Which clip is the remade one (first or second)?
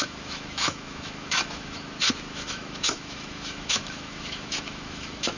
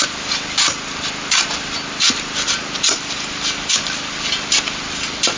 first